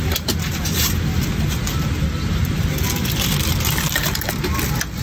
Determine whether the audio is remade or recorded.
recorded